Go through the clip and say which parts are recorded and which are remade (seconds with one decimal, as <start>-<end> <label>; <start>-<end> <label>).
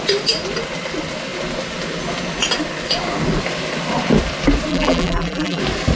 0.0-4.7 recorded; 4.7-5.6 remade; 5.6-6.0 recorded